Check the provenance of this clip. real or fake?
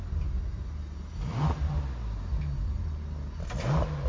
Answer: real